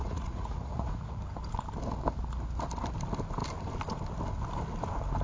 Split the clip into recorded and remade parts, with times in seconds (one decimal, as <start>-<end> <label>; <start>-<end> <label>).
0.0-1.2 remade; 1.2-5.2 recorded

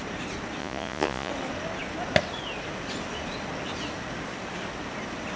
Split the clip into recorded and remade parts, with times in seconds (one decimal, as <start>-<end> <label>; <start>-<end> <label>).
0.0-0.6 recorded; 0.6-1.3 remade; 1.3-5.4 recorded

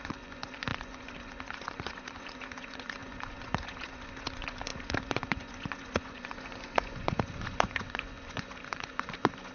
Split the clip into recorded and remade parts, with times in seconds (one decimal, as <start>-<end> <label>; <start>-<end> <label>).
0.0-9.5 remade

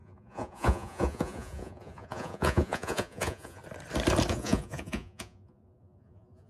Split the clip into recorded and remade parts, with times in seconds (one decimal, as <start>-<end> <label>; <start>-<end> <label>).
0.0-3.6 remade; 3.6-4.3 recorded; 4.3-6.5 remade

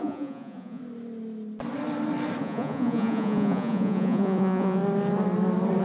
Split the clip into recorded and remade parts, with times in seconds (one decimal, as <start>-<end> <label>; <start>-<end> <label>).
0.0-0.8 remade; 0.8-2.4 recorded; 2.4-4.8 remade; 4.8-5.8 recorded